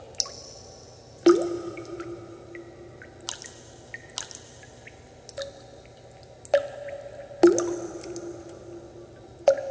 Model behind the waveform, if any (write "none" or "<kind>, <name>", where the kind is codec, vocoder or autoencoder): none